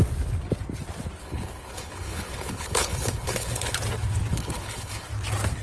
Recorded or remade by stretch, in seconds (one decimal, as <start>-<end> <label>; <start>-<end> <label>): 0.0-1.2 recorded; 1.2-3.7 remade; 3.7-4.3 recorded; 4.3-5.1 remade; 5.1-5.6 recorded